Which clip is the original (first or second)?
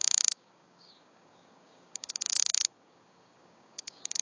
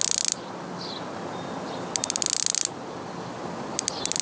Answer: second